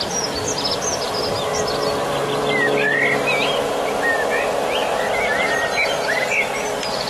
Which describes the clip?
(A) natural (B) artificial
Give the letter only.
A